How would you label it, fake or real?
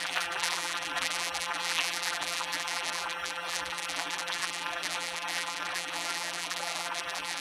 fake